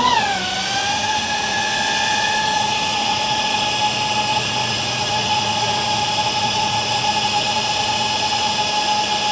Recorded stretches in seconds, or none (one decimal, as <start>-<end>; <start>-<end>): 0.0-0.8; 1.7-2.1; 3.6-4.3; 8.6-9.3